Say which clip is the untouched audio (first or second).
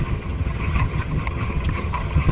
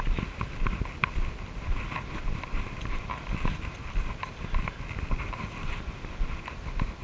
second